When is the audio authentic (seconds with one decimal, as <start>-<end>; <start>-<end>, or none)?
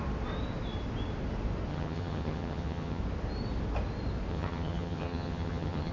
0.0-1.7; 3.0-4.3